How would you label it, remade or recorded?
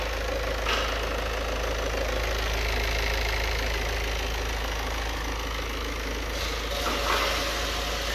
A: recorded